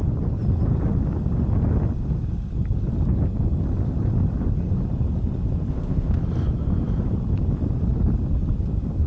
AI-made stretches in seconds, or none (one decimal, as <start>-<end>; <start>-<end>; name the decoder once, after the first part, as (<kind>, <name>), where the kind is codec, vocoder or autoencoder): 5.7-6.2 (codec, ZipCodec)